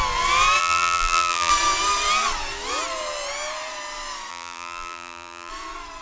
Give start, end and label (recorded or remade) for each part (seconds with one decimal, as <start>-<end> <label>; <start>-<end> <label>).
0.0-0.6 recorded; 0.6-1.5 remade; 1.5-4.3 recorded; 4.3-5.5 remade; 5.5-6.0 recorded